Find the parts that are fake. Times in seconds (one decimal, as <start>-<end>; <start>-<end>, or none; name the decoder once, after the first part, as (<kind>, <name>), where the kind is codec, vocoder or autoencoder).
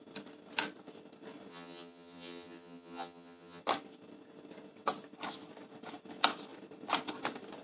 1.5-3.6 (vocoder, HiFi-GAN)